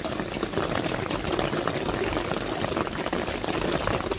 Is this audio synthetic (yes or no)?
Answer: no